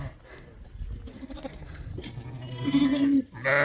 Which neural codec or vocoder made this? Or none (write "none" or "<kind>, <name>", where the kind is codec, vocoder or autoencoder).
none